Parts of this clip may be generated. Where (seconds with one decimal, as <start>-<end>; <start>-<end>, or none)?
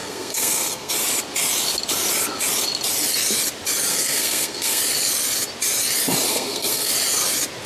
0.0-0.9; 3.9-4.8; 6.3-6.9